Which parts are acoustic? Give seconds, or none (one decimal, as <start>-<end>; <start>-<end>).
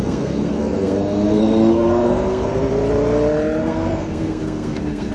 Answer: 2.7-3.6